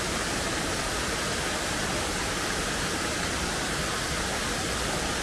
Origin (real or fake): real